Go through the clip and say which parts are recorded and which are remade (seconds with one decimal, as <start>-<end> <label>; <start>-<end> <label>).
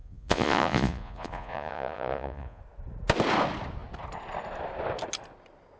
0.0-2.6 remade; 2.6-5.8 recorded